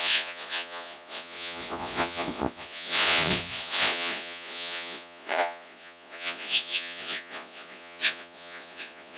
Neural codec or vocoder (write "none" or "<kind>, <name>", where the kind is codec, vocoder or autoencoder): vocoder, Vocos